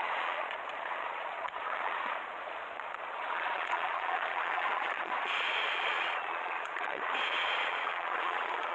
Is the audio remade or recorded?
remade